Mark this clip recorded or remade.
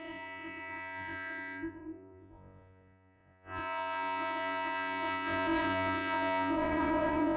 remade